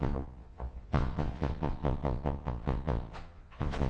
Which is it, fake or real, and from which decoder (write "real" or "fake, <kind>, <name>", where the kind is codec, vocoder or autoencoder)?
fake, vocoder, Vocos